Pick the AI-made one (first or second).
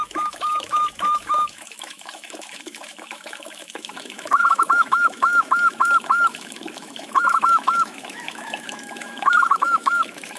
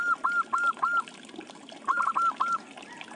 first